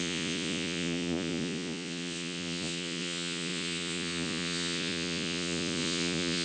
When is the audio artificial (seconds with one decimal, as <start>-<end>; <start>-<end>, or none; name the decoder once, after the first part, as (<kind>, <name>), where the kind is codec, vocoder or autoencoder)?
0.0-6.4 (vocoder, Vocos)